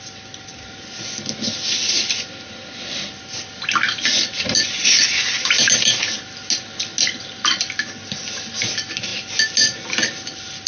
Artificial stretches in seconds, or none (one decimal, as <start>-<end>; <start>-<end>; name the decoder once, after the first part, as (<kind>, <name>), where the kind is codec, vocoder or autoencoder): none